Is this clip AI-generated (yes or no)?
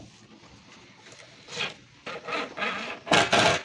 no